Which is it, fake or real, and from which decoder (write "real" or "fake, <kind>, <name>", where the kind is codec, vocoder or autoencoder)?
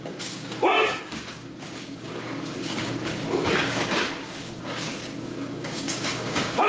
fake, codec, DAC